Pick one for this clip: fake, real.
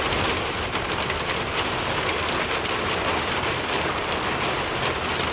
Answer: real